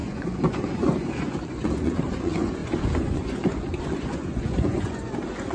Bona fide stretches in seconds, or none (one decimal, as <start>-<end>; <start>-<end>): none